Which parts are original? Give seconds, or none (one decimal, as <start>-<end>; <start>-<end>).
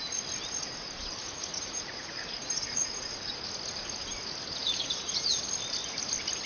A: 0.0-1.2; 3.3-4.6; 5.4-6.5